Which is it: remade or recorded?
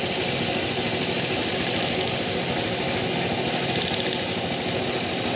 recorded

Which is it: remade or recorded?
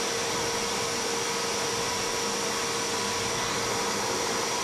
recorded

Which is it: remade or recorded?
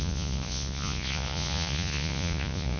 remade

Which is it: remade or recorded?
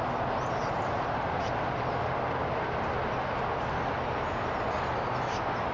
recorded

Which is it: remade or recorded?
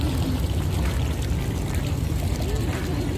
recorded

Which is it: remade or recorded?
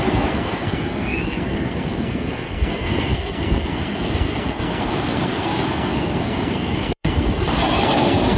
remade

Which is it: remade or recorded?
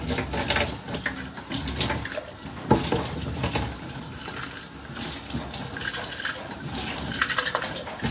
recorded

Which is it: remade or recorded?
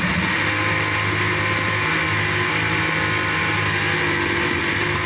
recorded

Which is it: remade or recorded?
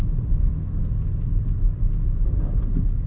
recorded